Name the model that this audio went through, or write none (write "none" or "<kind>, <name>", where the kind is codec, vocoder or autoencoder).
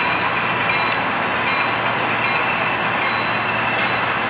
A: none